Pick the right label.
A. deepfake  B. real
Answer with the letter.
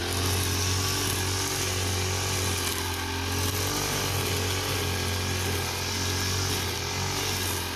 B